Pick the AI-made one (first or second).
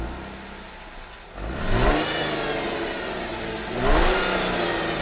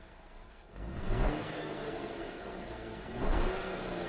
second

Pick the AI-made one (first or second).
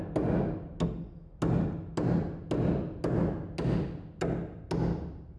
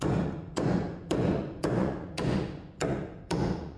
second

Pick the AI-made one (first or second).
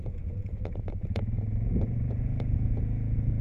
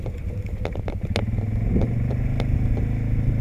first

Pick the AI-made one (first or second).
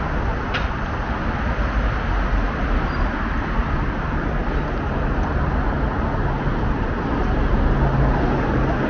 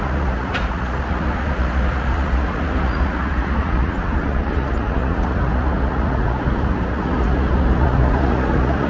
second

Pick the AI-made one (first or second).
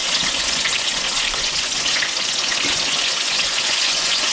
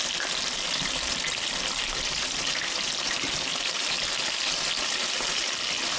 first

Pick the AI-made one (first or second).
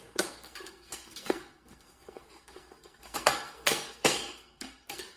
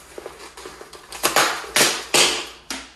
first